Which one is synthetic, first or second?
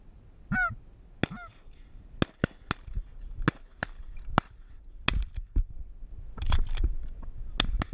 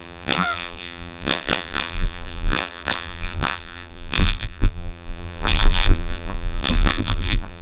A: second